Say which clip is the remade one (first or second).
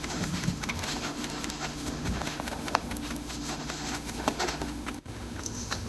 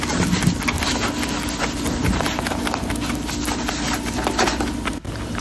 first